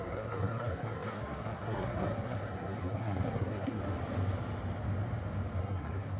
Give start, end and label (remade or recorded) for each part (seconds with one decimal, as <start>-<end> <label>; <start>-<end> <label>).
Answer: 0.0-3.8 remade; 3.8-5.6 recorded; 5.6-6.2 remade